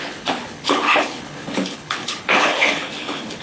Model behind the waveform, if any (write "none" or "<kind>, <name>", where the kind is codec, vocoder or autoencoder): codec, HILCodec